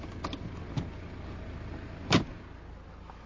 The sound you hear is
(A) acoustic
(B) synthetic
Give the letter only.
A